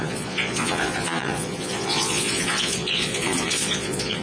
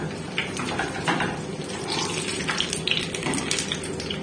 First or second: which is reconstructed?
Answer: first